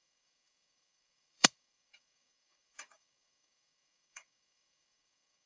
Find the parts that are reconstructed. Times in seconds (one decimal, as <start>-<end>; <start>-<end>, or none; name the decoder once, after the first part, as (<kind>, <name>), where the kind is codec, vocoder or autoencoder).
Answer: 0.0-5.5 (codec, DAC)